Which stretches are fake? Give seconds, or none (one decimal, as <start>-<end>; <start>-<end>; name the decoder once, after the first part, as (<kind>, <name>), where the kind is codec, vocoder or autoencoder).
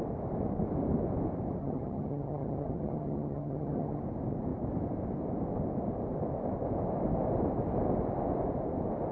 1.6-4.0 (vocoder, HiFi-GAN)